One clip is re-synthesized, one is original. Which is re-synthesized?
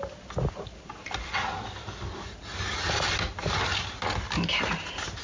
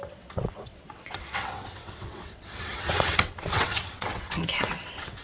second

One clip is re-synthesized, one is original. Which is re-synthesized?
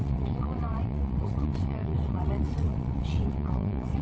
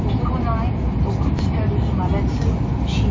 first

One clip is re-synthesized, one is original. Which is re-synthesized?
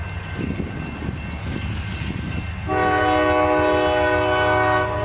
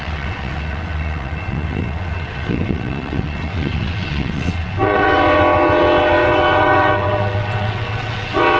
second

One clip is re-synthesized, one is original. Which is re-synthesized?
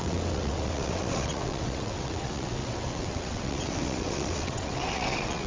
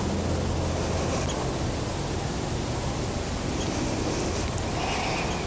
first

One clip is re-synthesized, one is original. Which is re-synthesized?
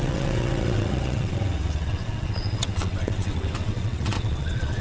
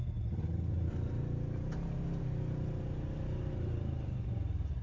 first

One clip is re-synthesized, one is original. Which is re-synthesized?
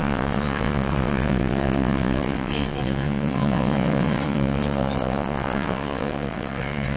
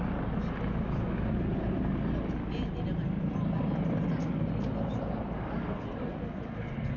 first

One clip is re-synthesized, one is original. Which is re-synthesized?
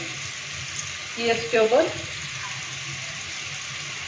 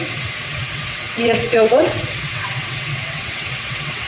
second